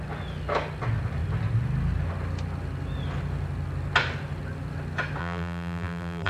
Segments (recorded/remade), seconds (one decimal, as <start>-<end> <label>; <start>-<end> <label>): 0.0-5.2 recorded; 5.2-6.3 remade